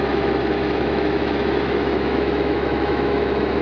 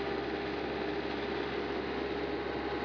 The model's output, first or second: first